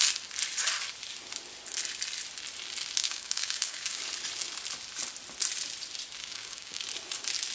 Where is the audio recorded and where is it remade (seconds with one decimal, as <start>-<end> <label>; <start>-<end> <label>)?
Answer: 0.0-3.0 recorded; 3.0-4.0 remade; 4.0-6.2 recorded; 6.2-6.8 remade; 6.8-7.5 recorded